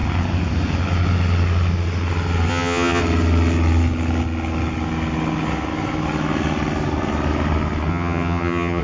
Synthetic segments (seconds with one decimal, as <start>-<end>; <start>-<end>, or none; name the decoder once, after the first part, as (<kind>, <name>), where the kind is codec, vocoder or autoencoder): 2.5-3.0 (vocoder, HiFi-GAN); 7.9-8.8